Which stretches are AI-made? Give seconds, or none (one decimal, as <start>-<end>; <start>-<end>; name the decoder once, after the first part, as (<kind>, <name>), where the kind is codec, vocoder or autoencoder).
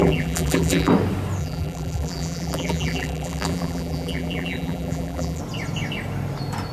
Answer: 0.0-0.9 (vocoder, BigVGAN v2); 1.4-5.4